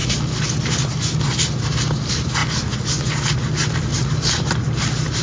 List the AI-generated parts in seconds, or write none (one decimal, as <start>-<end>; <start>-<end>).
none